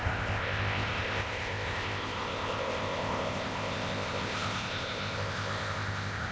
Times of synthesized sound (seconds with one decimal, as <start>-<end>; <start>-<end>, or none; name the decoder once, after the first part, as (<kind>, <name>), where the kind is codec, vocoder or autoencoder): 0.0-6.3 (codec, ZipCodec)